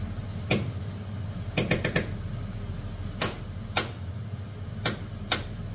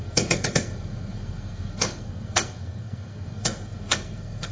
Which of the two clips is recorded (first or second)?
first